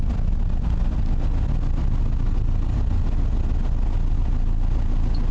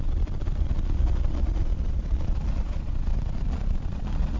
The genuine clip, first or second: first